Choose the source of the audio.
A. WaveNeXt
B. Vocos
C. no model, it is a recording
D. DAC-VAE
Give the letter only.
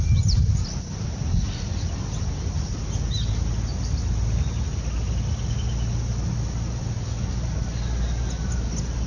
C